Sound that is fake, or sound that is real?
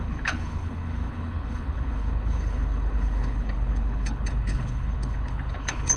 fake